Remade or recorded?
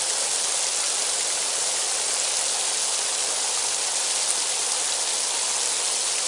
recorded